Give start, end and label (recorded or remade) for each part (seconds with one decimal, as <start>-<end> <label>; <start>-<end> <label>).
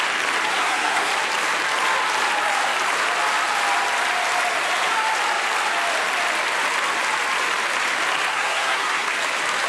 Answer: 0.0-0.5 recorded; 0.5-1.1 remade; 1.1-8.3 recorded; 8.3-9.1 remade; 9.1-9.7 recorded